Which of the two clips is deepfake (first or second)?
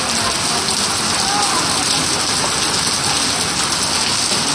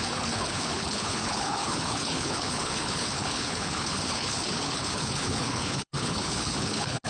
second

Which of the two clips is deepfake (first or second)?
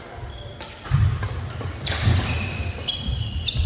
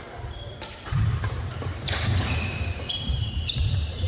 second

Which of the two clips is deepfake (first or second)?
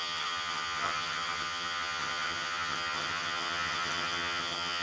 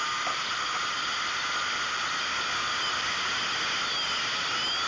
first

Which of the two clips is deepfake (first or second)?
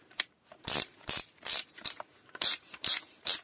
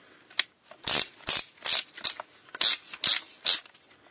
first